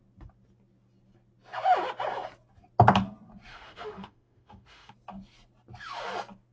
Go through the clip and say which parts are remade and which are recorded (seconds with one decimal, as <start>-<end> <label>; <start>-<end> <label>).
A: 0.0-3.5 recorded; 3.5-4.9 remade; 4.9-6.5 recorded